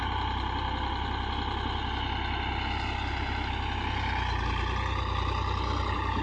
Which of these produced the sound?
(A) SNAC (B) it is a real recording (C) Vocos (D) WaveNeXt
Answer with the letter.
B